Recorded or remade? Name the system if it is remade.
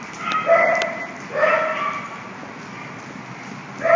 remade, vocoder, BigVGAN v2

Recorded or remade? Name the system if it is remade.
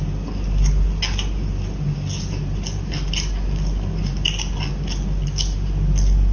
recorded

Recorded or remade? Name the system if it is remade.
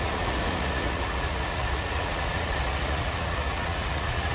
remade, vocoder, Vocos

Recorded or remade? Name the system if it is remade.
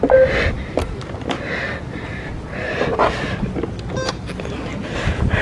recorded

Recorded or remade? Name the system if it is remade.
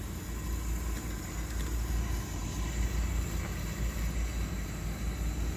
recorded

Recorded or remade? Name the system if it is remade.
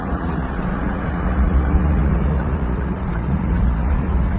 remade, vocoder, Vocos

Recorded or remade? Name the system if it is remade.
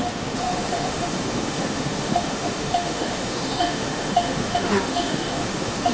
remade, autoencoder, DAC-VAE